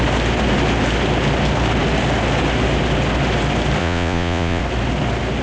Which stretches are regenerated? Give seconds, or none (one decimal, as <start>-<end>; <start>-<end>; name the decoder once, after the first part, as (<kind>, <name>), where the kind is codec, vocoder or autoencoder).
3.8-4.6 (vocoder, Vocos)